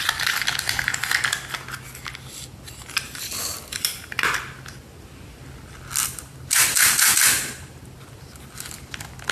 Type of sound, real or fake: real